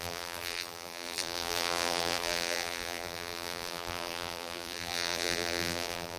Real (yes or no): no